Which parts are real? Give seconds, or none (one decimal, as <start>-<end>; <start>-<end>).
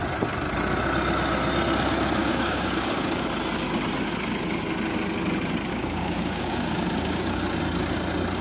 0.0-2.2; 3.2-5.7; 7.6-8.4